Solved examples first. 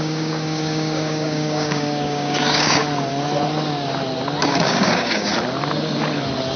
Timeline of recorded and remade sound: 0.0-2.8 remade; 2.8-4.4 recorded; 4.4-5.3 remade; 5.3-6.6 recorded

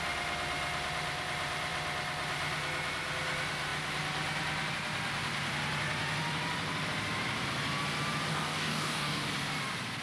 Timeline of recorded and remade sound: 0.0-8.3 recorded; 8.3-9.3 remade; 9.3-10.0 recorded

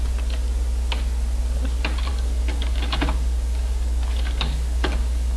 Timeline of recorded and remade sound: 0.0-2.1 recorded; 2.1-5.4 remade